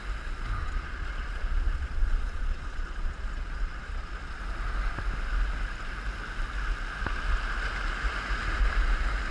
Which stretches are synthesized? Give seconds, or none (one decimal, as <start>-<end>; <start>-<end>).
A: 0.6-4.4